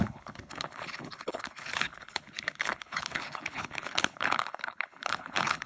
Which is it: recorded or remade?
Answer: remade